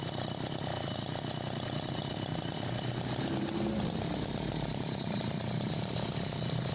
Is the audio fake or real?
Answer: real